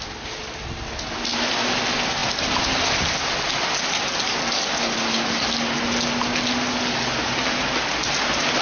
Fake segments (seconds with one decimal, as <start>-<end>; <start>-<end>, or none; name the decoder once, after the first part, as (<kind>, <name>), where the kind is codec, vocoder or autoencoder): none